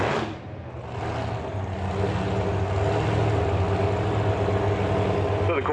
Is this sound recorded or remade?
recorded